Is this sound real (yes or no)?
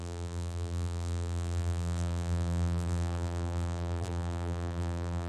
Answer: no